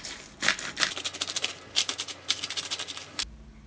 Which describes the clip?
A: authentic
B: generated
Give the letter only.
A